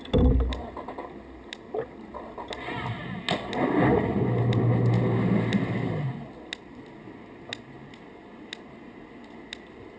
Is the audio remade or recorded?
recorded